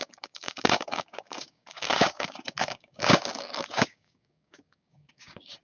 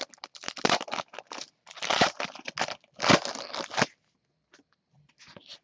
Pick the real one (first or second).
second